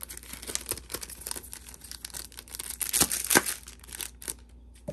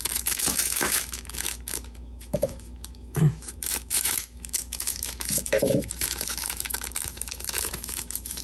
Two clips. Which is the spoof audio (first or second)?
second